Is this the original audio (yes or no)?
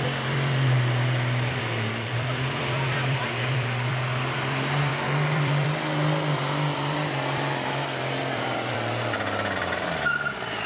no